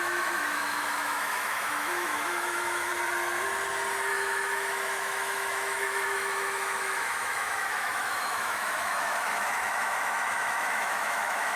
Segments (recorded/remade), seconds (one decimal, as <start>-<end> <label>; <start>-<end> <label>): 0.0-2.9 remade; 2.9-4.1 recorded; 4.1-11.6 remade